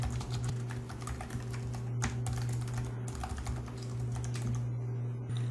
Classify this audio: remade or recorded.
recorded